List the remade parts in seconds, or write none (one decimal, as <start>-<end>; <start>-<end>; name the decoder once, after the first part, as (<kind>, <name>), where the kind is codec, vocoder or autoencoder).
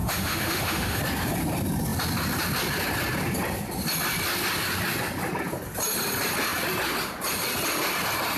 0.0-1.0 (autoencoder, DAC-VAE)